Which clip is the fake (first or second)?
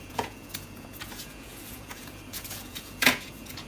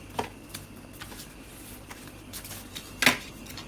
first